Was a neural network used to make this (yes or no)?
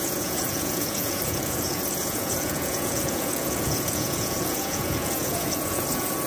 yes